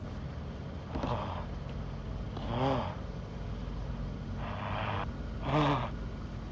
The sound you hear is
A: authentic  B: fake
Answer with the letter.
A